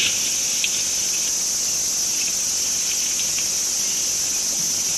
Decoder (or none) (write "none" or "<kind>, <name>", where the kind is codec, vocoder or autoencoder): none